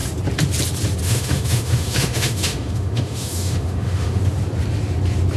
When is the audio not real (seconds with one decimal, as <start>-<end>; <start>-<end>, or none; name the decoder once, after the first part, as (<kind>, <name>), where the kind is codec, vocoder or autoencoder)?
1.0-4.2 (autoencoder, DAC-VAE)